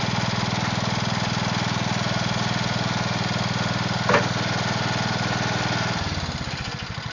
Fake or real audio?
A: real